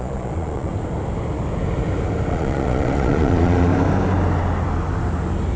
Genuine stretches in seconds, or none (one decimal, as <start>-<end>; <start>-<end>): 0.7-2.3; 3.7-5.6